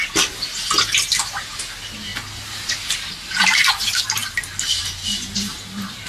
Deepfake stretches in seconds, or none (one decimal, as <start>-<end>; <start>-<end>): 0.0-0.6